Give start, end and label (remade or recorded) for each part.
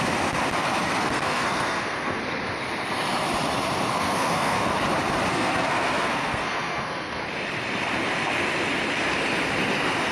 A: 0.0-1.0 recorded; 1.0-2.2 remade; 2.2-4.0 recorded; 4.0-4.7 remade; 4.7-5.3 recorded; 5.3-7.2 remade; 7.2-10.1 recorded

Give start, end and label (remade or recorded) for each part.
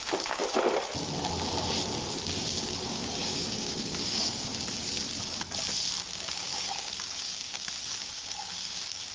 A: 0.0-0.4 remade; 0.4-2.8 recorded; 2.8-4.5 remade; 4.5-6.0 recorded; 6.0-9.1 remade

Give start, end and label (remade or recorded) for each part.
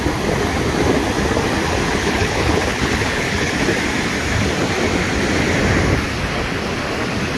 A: 0.0-2.0 recorded; 2.0-3.5 remade; 3.5-7.4 recorded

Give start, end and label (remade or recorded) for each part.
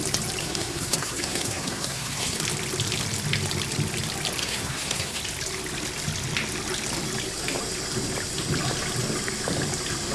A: 0.0-0.4 recorded; 0.4-2.4 remade; 2.4-4.4 recorded; 4.4-5.2 remade; 5.2-10.1 recorded